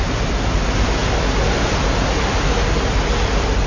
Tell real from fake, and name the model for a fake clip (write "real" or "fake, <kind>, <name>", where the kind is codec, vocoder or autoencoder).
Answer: real